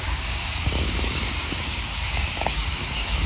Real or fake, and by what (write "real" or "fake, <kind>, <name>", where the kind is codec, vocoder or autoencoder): fake, codec, DAC